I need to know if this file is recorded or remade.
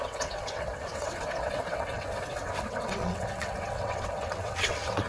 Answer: remade